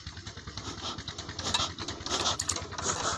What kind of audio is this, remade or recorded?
recorded